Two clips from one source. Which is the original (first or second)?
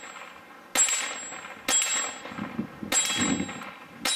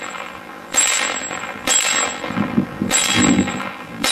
first